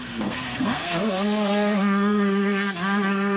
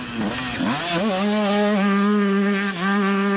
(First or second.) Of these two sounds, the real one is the second